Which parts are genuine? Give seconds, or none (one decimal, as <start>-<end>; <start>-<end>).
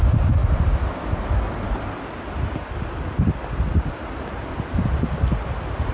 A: 0.0-5.9